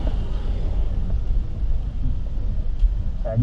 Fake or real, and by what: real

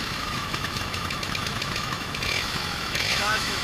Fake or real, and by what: fake, autoencoder, DAC-VAE